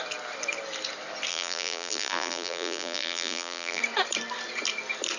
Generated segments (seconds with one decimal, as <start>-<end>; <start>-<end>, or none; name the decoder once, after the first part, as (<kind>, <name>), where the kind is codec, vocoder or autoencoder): 1.3-3.8 (vocoder, BigVGAN v2)